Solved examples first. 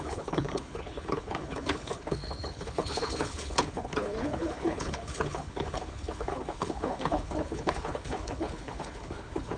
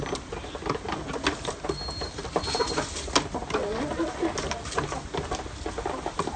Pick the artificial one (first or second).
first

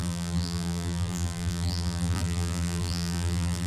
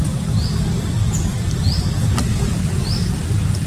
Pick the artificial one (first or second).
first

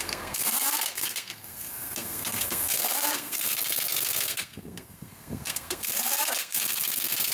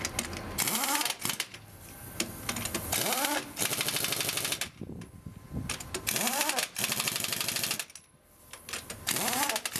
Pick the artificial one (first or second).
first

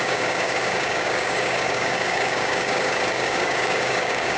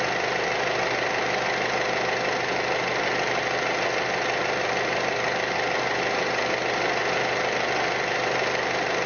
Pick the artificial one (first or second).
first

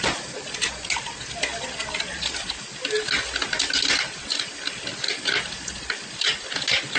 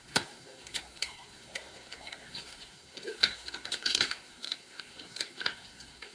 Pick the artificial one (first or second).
second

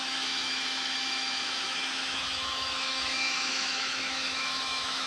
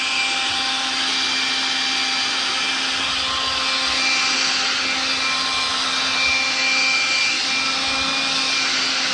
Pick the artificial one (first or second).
first